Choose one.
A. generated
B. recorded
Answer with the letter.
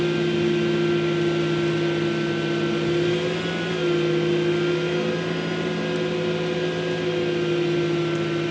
B